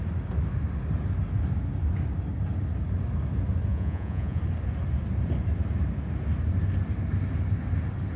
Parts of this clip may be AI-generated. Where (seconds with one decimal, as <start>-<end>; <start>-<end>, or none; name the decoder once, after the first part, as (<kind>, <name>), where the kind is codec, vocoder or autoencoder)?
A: 3.7-4.4 (vocoder, Vocos)